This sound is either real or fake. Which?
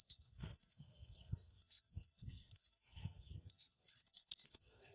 fake